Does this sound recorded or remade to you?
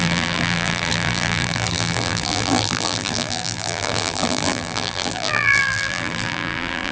remade